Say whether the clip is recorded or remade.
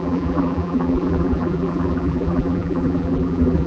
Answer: remade